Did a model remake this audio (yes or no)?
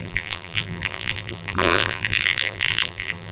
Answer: yes